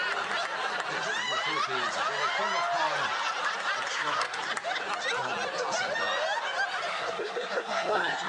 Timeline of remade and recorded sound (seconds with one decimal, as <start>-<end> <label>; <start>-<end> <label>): 0.0-3.9 recorded; 3.9-4.4 remade; 4.4-6.9 recorded; 6.9-8.3 remade